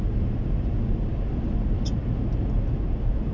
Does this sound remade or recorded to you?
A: recorded